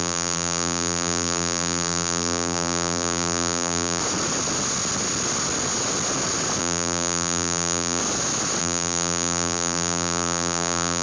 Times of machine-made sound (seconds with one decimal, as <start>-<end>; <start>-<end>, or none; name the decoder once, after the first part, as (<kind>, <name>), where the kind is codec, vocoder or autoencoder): 0.0-4.0 (vocoder, BigVGAN v2); 6.6-8.0; 8.6-11.0